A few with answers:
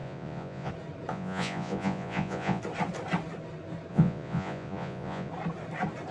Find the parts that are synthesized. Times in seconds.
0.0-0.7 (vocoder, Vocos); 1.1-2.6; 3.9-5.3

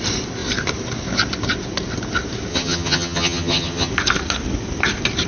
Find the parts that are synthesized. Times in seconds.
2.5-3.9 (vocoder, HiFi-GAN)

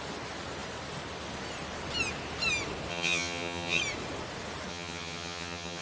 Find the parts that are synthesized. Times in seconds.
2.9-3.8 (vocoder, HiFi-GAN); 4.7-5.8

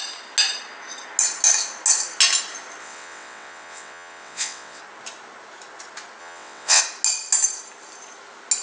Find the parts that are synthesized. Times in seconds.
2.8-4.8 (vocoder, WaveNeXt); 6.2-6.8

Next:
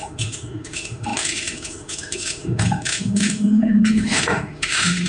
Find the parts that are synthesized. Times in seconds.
0.0-5.1 (autoencoder, DAC-VAE)